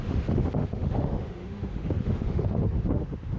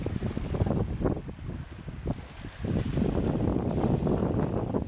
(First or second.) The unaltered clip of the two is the second